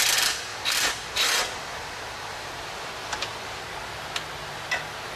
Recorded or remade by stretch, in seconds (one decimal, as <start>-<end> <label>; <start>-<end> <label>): 0.0-0.5 recorded; 0.5-3.6 remade; 3.6-5.2 recorded